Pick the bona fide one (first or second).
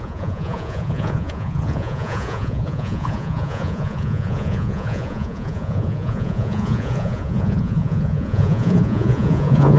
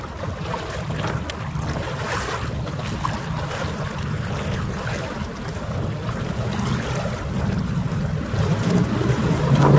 second